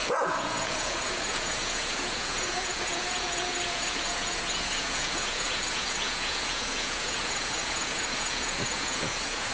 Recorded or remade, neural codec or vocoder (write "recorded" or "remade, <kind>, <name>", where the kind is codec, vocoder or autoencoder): remade, vocoder, Vocos